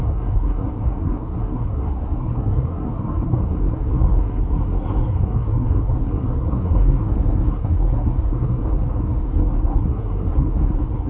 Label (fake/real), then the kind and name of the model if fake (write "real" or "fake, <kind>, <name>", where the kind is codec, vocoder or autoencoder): fake, codec, SNAC